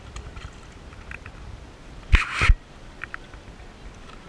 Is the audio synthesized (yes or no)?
no